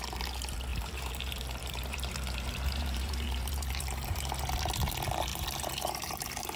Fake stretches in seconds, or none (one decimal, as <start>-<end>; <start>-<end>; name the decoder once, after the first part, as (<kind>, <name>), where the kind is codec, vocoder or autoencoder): 0.7-4.4 (vocoder, BigVGAN v2); 5.3-6.6